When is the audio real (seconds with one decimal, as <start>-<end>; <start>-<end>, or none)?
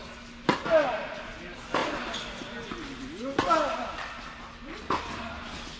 0.0-5.8